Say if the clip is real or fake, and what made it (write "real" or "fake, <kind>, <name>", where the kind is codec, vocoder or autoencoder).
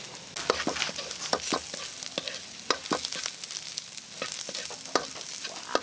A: real